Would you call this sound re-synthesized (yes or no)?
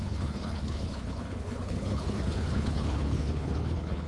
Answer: yes